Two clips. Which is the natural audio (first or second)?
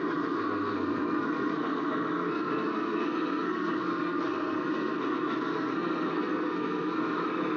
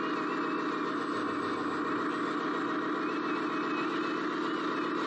second